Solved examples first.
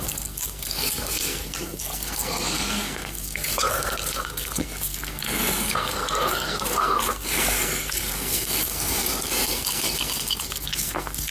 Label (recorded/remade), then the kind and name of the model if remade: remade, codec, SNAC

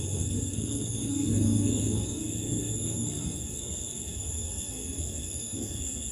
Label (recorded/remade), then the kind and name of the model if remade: remade, codec, SNAC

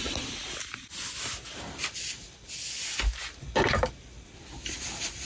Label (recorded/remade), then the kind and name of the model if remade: recorded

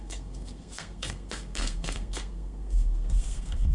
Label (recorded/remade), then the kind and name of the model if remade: remade, codec, SNAC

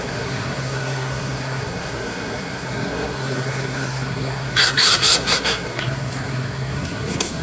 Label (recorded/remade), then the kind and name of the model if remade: remade, codec, SNAC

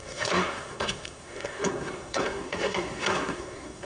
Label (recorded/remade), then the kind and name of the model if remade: remade, codec, SNAC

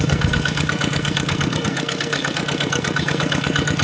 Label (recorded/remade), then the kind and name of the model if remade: remade, codec, SNAC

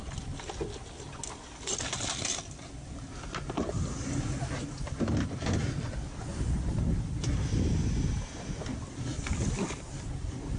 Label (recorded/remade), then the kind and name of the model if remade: recorded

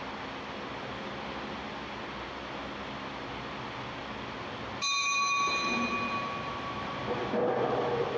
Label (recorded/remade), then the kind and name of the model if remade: recorded